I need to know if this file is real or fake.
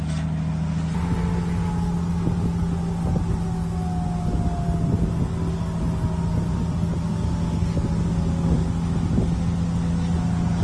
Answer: real